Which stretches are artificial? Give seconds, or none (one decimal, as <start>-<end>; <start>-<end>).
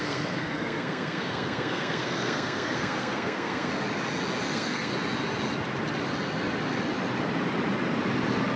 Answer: 0.0-3.7; 4.4-4.9